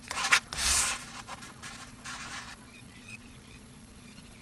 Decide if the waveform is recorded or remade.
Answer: remade